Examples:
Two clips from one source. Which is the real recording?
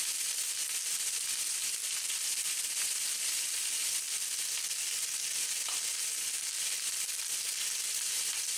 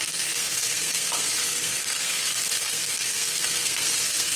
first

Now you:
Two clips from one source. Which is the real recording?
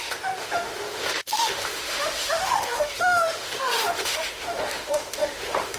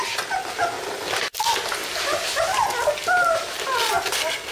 second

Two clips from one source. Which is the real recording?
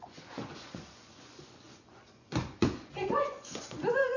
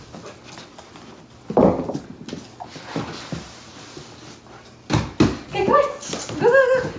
second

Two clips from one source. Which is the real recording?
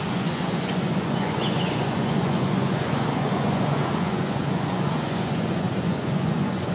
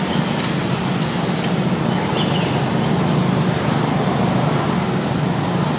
second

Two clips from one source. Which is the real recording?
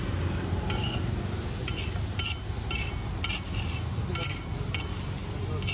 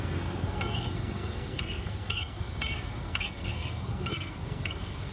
first